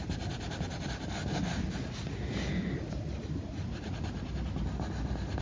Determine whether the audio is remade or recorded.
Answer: recorded